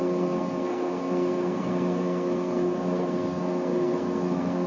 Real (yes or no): no